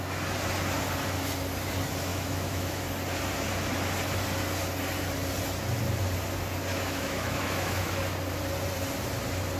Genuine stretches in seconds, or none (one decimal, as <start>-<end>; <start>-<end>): 0.0-2.1; 2.8-6.7; 8.0-9.6